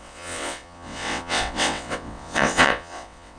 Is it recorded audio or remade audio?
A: remade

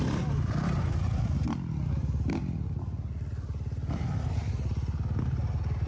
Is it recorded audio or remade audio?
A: recorded